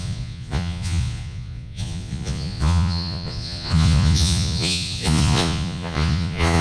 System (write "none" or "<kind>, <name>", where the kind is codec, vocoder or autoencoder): vocoder, Vocos